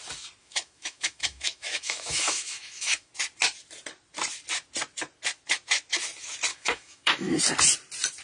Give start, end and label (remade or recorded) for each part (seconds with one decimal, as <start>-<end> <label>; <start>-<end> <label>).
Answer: 0.0-0.4 recorded; 0.4-3.1 remade; 3.1-6.5 recorded; 6.5-7.4 remade; 7.4-8.2 recorded